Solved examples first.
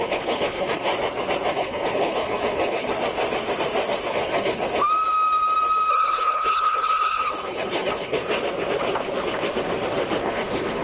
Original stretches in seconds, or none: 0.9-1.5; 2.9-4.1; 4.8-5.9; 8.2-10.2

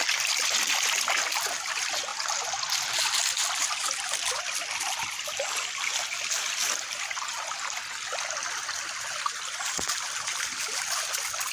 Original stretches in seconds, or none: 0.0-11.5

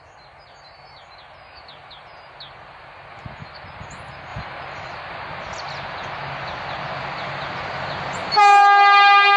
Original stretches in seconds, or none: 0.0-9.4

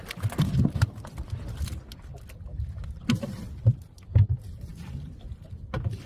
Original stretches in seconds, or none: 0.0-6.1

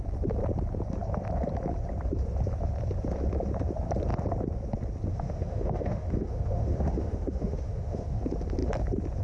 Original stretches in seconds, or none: 0.0-5.1; 8.2-9.2

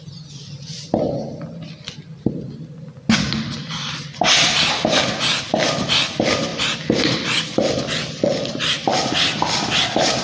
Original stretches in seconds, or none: 0.0-10.2